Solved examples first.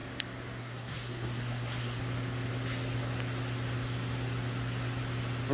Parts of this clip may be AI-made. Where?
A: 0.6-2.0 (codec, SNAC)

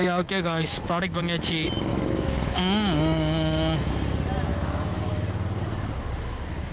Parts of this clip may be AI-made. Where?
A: 0.0-1.2 (autoencoder, DAC-VAE); 1.9-3.9; 4.5-5.0

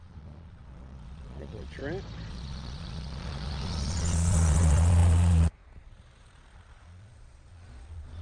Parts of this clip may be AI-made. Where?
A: 0.0-1.8 (vocoder, Vocos); 2.3-8.2

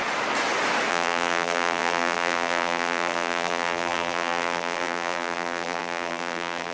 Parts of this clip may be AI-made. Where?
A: 0.9-6.7 (vocoder, BigVGAN v2)

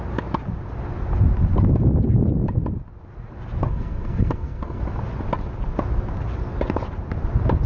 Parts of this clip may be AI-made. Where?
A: 3.7-4.8 (codec, SNAC)

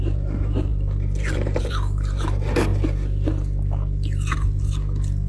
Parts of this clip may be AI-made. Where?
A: 0.0-2.7 (vocoder, BigVGAN v2)

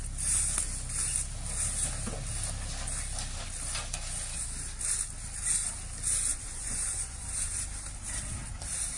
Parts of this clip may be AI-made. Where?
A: 6.3-7.2 (vocoder, Vocos)

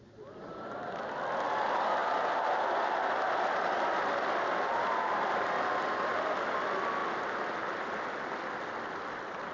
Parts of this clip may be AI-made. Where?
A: none